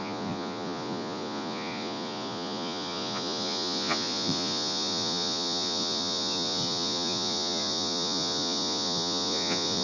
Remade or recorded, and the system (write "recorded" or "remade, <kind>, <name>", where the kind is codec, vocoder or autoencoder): remade, vocoder, Vocos